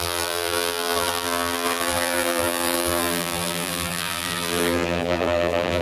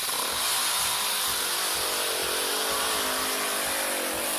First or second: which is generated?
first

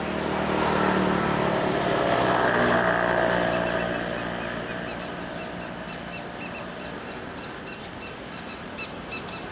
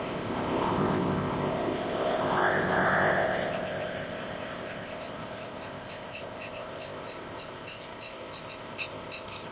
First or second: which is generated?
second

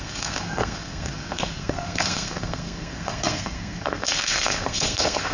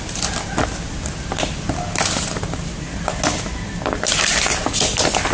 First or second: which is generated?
first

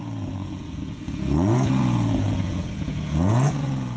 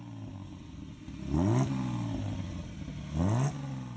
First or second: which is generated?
first